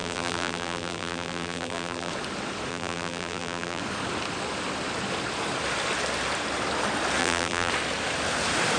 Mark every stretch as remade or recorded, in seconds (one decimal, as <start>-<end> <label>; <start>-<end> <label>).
0.0-2.1 remade; 2.1-2.7 recorded; 2.7-3.8 remade; 3.8-7.2 recorded; 7.2-7.7 remade; 7.7-8.8 recorded